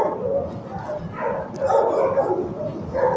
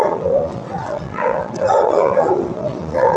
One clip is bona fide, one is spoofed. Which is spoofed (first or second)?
second